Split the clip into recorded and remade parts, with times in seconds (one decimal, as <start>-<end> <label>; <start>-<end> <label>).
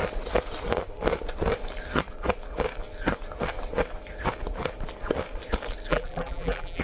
0.0-5.9 recorded; 5.9-6.8 remade